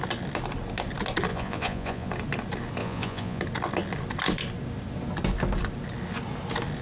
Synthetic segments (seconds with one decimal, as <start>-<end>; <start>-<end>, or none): 1.3-2.1; 2.8-3.4